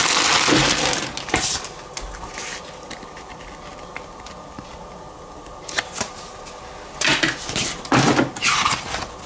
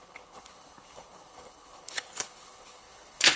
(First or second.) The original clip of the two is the first